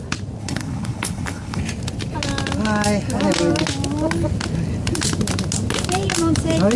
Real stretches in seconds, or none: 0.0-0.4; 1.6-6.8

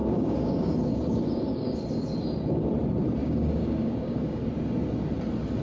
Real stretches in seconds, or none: 1.8-3.2; 4.4-5.6